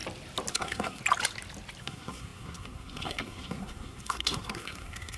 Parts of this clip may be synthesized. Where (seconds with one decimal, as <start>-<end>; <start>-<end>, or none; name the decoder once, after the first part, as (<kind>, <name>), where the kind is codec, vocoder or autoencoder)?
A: 0.5-1.0 (codec, SNAC); 1.8-5.2